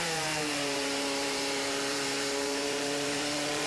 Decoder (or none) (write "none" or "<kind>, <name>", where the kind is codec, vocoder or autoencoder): vocoder, BigVGAN v2